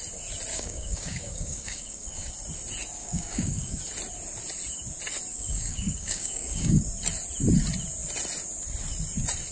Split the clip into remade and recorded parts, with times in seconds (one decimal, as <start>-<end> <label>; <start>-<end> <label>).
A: 0.0-0.5 recorded; 0.5-2.3 remade; 2.3-3.0 recorded; 3.0-3.8 remade; 3.8-5.3 recorded; 5.3-6.8 remade; 6.8-9.5 recorded